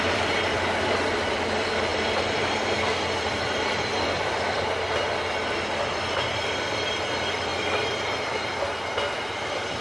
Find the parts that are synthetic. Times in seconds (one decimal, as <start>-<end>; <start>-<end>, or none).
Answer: 0.0-7.5; 8.8-9.8